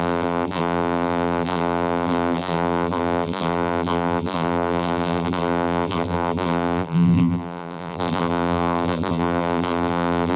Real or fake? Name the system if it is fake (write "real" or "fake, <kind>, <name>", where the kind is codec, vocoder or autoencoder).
fake, vocoder, BigVGAN v2